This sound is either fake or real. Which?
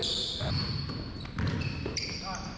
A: real